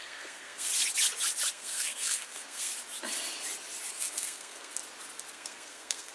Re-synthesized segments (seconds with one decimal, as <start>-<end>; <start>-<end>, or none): 0.0-0.7; 1.5-2.7; 3.9-4.8; 5.3-6.1